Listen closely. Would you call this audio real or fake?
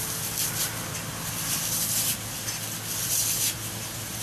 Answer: fake